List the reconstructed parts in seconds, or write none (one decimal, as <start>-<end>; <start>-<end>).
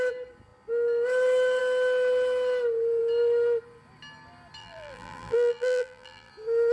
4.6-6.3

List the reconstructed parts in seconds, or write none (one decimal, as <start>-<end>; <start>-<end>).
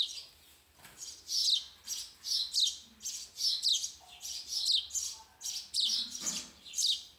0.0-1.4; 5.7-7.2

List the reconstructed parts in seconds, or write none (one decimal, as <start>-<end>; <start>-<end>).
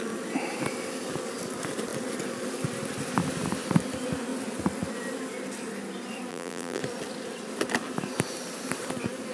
6.3-6.8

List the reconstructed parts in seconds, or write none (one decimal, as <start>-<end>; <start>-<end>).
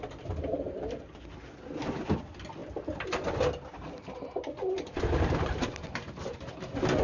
none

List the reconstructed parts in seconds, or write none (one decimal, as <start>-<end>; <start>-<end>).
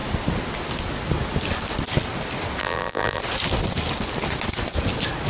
2.6-3.2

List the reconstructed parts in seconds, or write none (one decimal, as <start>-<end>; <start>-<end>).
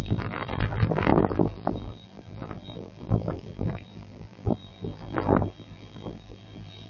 0.0-6.9